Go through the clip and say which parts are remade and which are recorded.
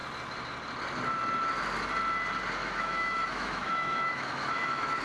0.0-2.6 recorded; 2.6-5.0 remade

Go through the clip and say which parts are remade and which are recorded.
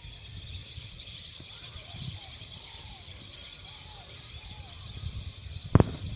0.0-0.6 recorded; 0.6-4.3 remade; 4.3-6.2 recorded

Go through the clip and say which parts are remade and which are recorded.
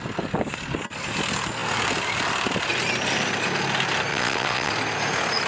0.0-4.1 recorded; 4.1-4.7 remade; 4.7-5.5 recorded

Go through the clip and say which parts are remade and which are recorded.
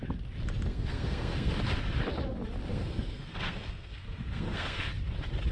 0.0-0.7 recorded; 0.7-1.5 remade; 1.5-2.7 recorded; 2.7-4.9 remade; 4.9-5.5 recorded